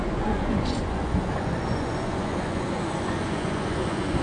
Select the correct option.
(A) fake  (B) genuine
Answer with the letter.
A